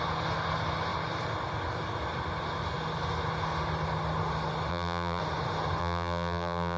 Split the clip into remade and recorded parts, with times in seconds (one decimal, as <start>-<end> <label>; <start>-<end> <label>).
0.0-4.7 recorded; 4.7-5.2 remade; 5.2-5.8 recorded; 5.8-6.8 remade